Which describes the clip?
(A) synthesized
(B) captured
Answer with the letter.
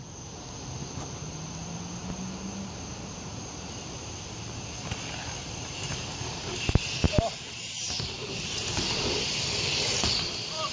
B